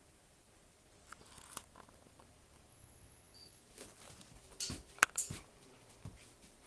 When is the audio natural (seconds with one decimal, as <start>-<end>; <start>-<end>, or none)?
0.0-2.7; 3.6-6.7